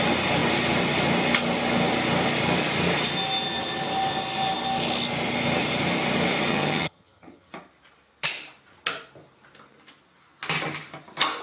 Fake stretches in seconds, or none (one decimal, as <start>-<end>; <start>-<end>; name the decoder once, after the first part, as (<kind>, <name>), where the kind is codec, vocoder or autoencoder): 6.5-7.5 (vocoder, HiFi-GAN)